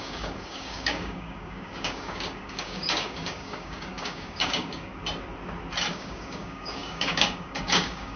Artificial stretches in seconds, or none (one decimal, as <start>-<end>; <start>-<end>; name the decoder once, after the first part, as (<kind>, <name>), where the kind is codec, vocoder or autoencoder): 0.0-4.9 (codec, DAC); 5.9-8.2